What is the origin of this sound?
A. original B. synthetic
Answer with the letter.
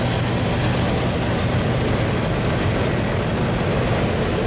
A